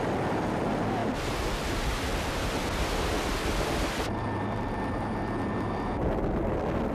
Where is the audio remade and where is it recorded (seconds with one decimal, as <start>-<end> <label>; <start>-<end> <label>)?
0.0-1.0 remade; 1.0-2.3 recorded; 2.3-3.5 remade; 3.5-4.4 recorded; 4.4-6.9 remade